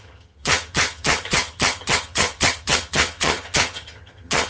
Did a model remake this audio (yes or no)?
yes